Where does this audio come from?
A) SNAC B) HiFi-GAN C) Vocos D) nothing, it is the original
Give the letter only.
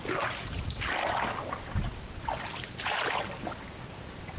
D